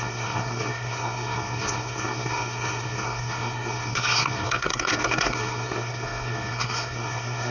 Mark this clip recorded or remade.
remade